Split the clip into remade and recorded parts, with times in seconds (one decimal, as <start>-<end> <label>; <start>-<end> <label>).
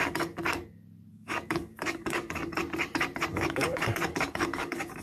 0.0-0.4 remade; 0.4-1.1 recorded; 1.1-2.6 remade; 2.6-3.3 recorded; 3.3-5.0 remade